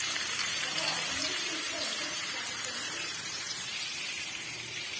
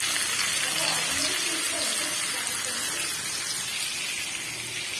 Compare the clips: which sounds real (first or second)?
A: second